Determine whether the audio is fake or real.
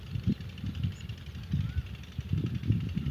real